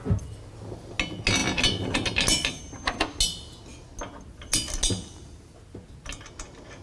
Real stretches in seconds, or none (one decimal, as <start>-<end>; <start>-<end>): 0.0-6.8